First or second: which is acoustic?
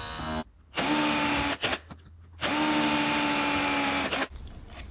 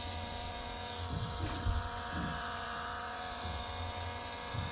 first